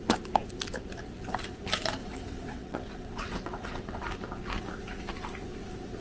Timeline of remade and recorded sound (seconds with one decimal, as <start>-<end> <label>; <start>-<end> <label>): 0.0-2.0 recorded; 2.0-4.0 remade; 4.0-6.0 recorded